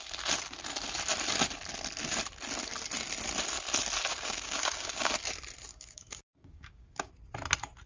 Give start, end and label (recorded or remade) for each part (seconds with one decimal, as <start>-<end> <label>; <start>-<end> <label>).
0.0-4.1 recorded; 4.1-5.1 remade; 5.1-5.7 recorded; 5.7-7.1 remade; 7.1-7.9 recorded